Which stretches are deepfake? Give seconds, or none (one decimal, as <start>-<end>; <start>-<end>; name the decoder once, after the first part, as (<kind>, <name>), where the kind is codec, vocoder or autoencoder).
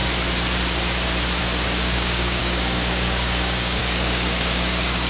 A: 1.4-5.1 (codec, DAC)